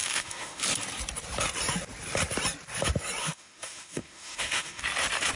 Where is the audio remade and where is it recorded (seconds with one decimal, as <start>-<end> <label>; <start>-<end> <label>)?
0.0-0.6 remade; 0.6-3.2 recorded; 3.2-4.8 remade; 4.8-5.4 recorded